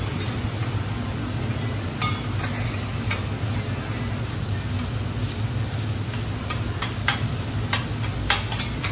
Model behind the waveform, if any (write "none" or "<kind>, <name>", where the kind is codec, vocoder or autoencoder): none